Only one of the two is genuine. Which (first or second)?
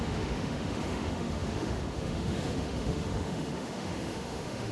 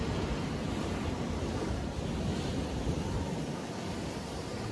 second